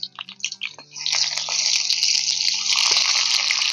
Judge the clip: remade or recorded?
recorded